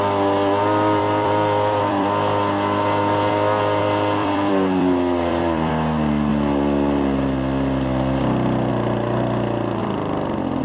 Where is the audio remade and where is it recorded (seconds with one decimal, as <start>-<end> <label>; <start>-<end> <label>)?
0.0-1.0 recorded; 1.0-3.3 remade; 3.3-3.8 recorded; 3.8-5.7 remade; 5.7-9.8 recorded; 9.8-10.6 remade